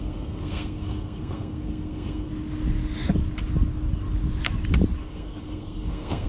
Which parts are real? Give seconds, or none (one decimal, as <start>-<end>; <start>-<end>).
2.3-5.0